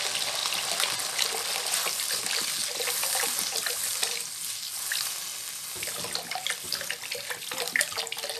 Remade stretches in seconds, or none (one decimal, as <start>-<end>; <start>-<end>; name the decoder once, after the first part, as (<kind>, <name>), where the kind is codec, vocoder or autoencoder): none